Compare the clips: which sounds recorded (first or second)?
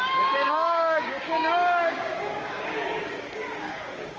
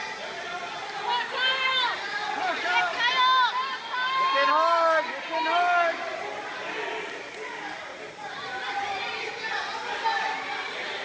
second